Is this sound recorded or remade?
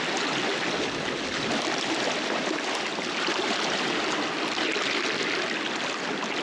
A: recorded